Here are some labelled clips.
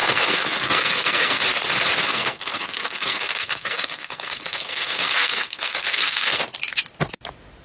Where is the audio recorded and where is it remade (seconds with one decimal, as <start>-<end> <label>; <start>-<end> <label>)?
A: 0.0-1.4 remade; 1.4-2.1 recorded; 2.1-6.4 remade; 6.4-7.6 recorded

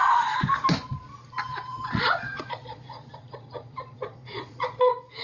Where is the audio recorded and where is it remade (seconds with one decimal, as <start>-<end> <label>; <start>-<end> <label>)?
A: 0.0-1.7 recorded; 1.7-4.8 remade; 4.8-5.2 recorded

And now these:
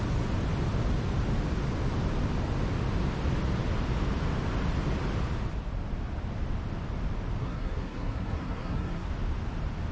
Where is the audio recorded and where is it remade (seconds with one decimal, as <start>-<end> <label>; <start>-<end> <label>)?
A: 0.0-7.4 recorded; 7.4-9.1 remade; 9.1-9.9 recorded